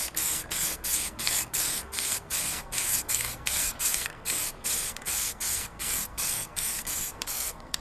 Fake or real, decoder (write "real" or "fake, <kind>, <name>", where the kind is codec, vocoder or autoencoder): fake, codec, SNAC